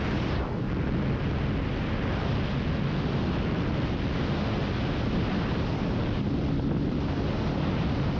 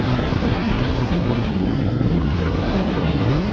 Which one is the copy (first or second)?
second